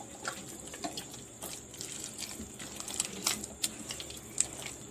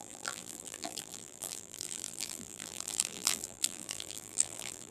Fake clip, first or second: second